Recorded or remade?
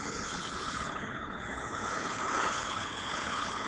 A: remade